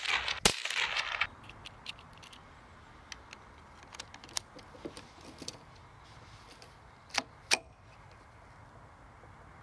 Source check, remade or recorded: recorded